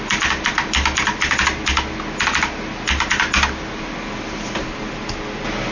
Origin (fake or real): real